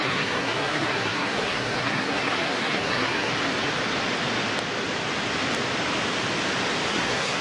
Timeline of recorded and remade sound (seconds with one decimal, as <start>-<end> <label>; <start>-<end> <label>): 0.0-3.3 remade; 3.3-6.9 recorded; 6.9-7.4 remade